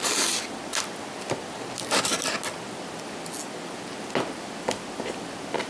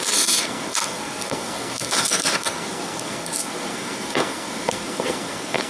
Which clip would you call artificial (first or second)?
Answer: second